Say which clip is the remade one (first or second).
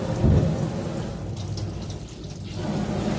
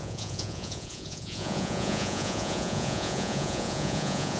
second